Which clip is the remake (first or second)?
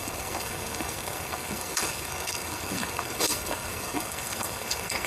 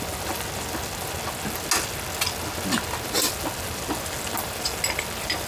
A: first